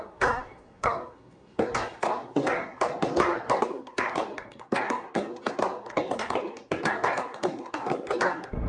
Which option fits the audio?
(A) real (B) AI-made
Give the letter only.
B